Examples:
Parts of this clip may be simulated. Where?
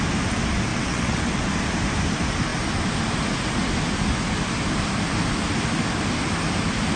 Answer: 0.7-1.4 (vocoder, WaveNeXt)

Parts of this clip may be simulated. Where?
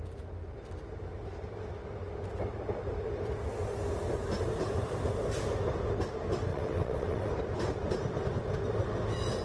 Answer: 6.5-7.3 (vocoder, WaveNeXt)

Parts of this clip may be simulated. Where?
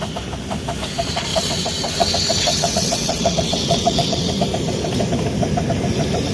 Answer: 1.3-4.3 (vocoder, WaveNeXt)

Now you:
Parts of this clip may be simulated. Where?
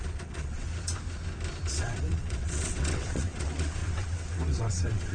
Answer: 0.0-0.7 (vocoder, WaveNeXt); 1.7-5.1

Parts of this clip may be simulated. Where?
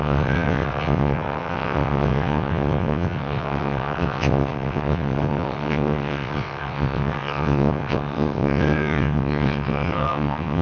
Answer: 0.0-10.6 (vocoder, WaveNeXt)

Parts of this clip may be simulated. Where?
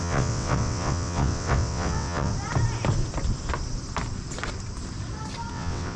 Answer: 0.0-2.3 (vocoder, WaveNeXt); 5.5-6.0